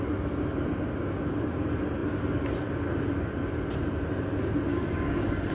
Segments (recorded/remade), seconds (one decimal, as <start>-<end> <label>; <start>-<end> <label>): 0.0-4.7 recorded; 4.7-5.5 remade